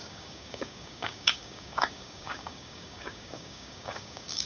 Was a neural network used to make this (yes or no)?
yes